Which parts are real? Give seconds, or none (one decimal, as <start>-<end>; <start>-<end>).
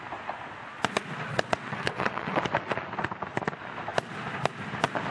0.0-1.3; 2.4-5.1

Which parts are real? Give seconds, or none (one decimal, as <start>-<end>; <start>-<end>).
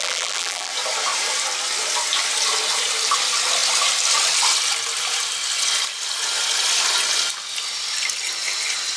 0.7-9.0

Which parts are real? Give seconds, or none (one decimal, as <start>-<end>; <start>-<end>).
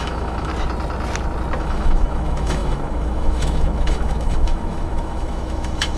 0.5-1.6